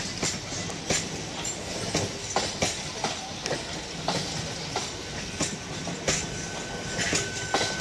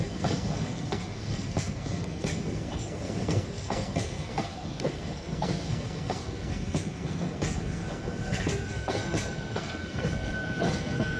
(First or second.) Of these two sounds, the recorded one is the first